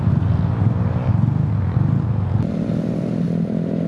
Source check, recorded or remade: recorded